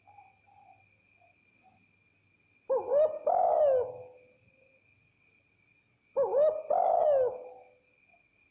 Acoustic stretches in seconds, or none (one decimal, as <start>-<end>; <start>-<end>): 0.0-2.9; 3.4-8.5